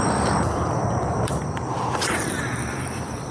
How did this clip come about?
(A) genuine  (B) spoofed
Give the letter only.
B